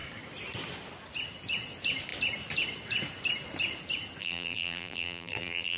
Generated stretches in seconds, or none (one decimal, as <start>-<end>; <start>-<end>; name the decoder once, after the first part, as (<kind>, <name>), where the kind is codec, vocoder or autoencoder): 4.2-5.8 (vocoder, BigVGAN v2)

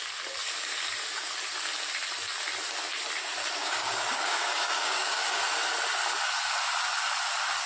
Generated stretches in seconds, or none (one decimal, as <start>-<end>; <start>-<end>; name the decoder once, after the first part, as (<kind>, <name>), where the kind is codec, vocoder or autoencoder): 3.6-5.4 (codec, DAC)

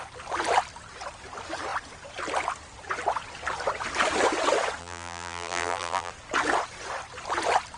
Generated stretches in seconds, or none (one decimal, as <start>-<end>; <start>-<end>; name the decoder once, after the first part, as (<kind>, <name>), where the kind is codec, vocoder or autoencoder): 4.8-6.1 (vocoder, BigVGAN v2)

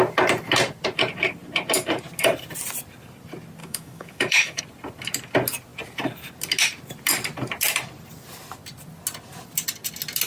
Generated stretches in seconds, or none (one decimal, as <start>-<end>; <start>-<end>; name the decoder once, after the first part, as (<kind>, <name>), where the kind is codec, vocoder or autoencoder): 3.6-4.6 (autoencoder, DAC-VAE)

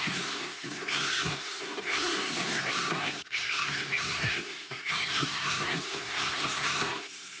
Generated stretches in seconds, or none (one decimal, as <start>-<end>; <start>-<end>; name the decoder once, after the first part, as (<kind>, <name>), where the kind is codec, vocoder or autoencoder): 0.0-7.4 (codec, SNAC)